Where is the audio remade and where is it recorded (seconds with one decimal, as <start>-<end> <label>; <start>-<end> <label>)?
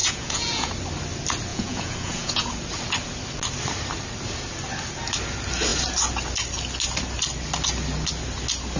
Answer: 0.0-0.7 remade; 0.7-1.5 recorded; 1.5-2.5 remade; 2.5-8.8 recorded